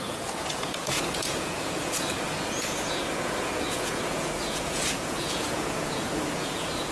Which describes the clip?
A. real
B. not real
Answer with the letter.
B